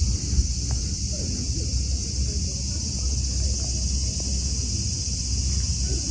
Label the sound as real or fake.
real